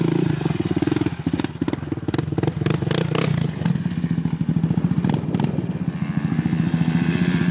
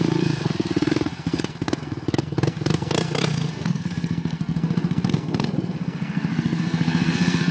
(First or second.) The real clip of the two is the first